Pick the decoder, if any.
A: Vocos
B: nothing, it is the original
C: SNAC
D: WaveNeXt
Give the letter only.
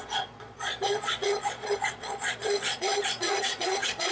A